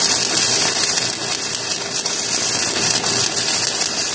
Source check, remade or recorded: recorded